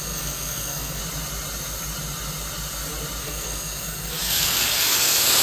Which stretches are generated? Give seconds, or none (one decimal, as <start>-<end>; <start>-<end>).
0.0-1.0; 3.2-5.4